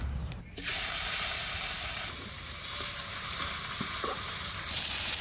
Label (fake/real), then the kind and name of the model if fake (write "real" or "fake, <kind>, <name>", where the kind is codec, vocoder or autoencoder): fake, vocoder, BigVGAN v2